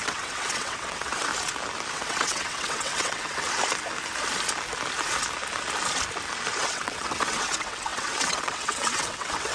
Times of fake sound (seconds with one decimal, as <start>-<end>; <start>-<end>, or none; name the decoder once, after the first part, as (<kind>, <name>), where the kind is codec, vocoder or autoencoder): 0.0-1.3 (vocoder, WaveNeXt); 1.9-3.6; 6.6-9.5